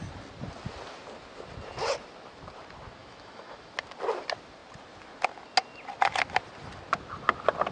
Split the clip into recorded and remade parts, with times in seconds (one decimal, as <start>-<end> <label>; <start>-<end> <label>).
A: 0.0-3.0 recorded; 3.0-3.7 remade; 3.7-7.7 recorded